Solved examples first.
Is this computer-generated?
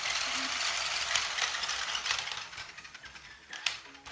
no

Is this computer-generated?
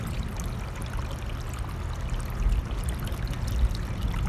no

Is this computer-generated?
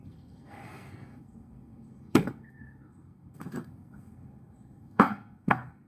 yes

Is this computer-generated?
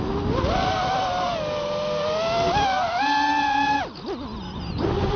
no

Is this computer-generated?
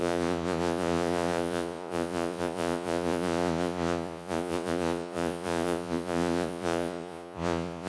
yes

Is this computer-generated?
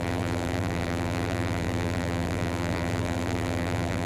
yes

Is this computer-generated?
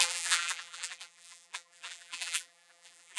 yes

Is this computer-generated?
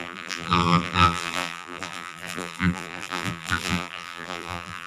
yes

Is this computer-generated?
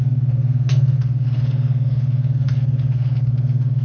yes